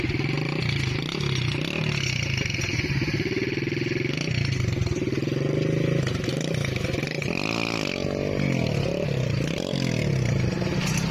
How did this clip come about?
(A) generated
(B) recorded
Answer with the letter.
B